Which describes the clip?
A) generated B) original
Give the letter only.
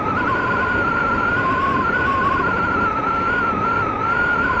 B